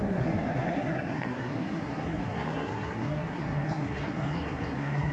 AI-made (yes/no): yes